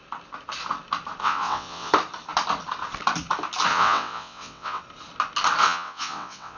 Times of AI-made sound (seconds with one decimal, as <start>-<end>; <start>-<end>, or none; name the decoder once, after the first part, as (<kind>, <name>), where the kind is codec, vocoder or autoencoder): 1.2-1.9 (vocoder, WaveNeXt); 3.7-4.8; 5.6-6.6